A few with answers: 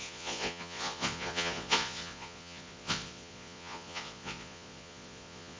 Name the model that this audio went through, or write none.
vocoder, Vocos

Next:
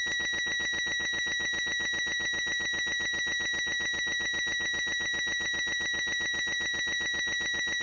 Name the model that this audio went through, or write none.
none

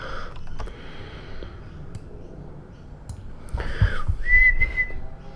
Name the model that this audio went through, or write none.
none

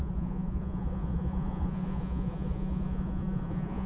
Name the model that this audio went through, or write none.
vocoder, Vocos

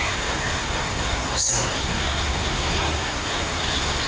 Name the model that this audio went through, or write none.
codec, SNAC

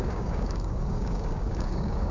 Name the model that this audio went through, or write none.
codec, DAC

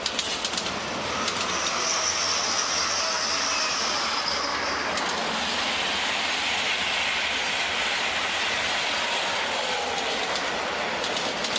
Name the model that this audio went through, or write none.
none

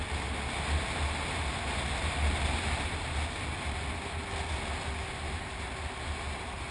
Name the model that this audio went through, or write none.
none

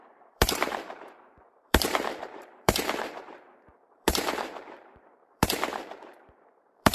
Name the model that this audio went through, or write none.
vocoder, BigVGAN v2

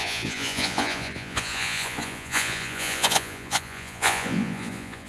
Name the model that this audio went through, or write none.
vocoder, Vocos